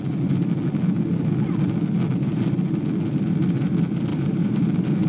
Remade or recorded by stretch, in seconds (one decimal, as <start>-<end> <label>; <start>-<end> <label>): 0.0-4.1 recorded; 4.1-4.6 remade; 4.6-5.1 recorded

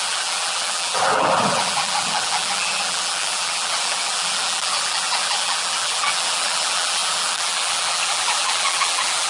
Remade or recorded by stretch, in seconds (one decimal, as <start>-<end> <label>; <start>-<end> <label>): 0.0-9.3 remade

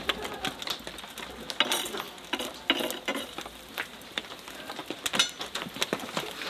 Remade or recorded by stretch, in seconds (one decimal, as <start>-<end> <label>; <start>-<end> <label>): 0.0-6.5 recorded

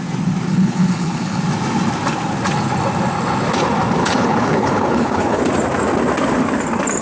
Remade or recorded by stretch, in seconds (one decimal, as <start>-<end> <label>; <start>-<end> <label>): 0.0-0.5 recorded; 0.5-1.4 remade; 1.4-4.0 recorded; 4.0-5.4 remade; 5.4-7.0 recorded

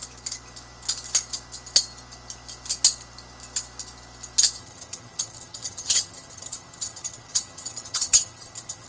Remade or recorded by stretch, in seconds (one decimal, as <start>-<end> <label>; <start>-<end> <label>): 0.0-4.6 recorded; 4.6-8.9 remade